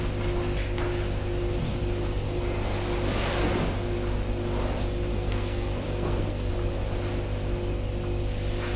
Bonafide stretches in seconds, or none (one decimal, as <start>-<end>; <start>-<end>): 0.0-5.1; 6.5-8.8